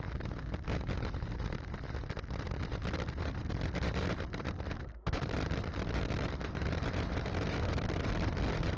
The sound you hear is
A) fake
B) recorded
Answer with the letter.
A